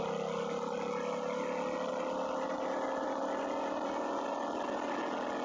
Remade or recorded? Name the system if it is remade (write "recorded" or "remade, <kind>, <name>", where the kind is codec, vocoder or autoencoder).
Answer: recorded